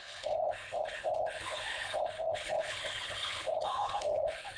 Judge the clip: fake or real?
fake